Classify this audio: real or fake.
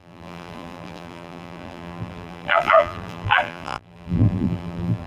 fake